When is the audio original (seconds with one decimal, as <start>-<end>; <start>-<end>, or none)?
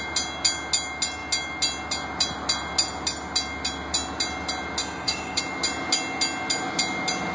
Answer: 0.0-4.8; 5.4-7.3